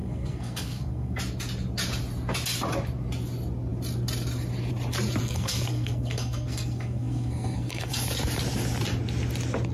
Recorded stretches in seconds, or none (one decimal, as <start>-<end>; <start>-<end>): 1.2-5.2; 7.9-9.7